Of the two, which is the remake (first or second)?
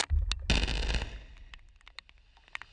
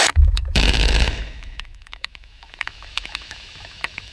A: second